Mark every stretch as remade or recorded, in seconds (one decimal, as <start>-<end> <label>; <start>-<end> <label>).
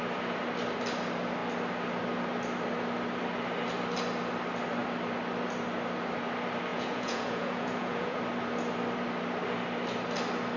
0.0-6.7 recorded; 6.7-8.2 remade; 8.2-10.6 recorded